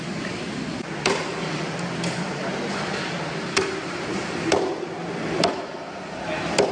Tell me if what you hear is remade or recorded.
recorded